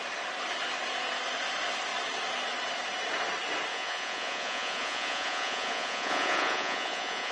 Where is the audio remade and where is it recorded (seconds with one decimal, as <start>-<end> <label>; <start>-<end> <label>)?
0.0-3.7 recorded; 3.7-7.3 remade